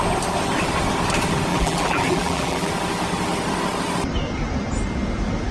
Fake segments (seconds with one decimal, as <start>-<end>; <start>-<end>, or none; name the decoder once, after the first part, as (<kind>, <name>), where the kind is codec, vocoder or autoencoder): 1.5-2.7 (vocoder, BigVGAN v2)

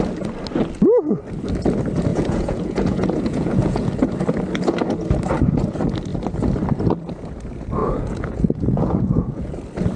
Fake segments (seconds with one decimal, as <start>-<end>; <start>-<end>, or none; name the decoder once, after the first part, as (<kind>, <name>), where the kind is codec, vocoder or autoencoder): 2.1-3.9 (vocoder, Vocos); 7.8-9.5

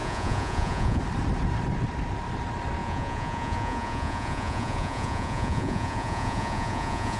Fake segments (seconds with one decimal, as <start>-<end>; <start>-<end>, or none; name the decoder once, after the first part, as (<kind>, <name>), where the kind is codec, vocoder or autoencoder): 0.0-1.0 (vocoder, Vocos); 2.8-7.2

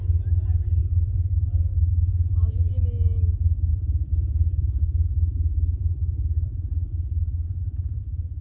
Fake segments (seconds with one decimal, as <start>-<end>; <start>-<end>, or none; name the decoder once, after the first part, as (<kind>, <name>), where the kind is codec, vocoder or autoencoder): 0.8-1.9 (vocoder, BigVGAN v2); 3.7-4.8

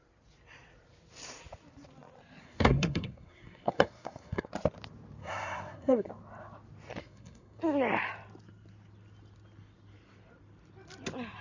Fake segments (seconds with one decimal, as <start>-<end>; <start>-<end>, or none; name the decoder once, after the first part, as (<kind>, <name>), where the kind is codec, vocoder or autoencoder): 2.4-4.5 (codec, SNAC); 5.2-6.1; 7.0-7.6

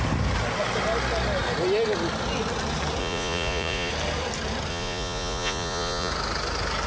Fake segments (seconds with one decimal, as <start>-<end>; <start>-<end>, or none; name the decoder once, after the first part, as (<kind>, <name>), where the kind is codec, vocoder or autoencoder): 3.0-3.9 (vocoder, Vocos); 4.7-6.1